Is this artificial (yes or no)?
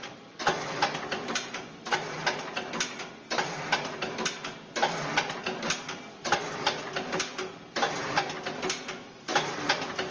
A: no